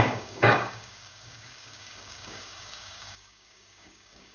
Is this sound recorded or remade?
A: remade